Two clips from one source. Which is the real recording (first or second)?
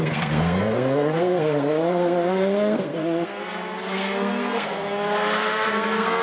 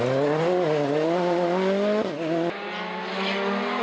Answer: second